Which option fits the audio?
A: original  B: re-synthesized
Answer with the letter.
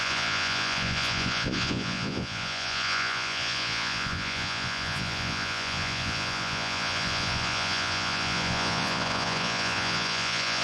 B